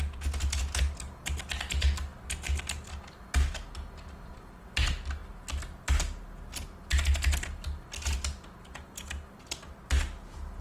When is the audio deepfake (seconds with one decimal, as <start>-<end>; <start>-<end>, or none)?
none